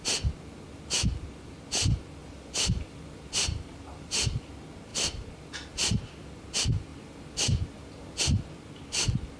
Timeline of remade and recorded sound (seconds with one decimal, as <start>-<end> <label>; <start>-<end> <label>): 0.0-2.2 recorded; 2.2-4.4 remade; 4.4-9.4 recorded